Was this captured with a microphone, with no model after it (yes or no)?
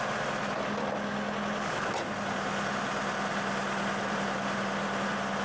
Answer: yes